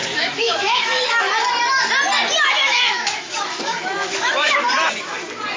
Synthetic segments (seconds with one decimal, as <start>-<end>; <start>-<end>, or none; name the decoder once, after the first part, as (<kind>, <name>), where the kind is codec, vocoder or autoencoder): 0.0-1.2 (autoencoder, DAC-VAE); 2.6-4.6